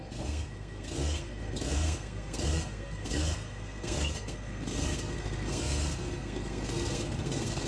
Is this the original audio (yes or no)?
no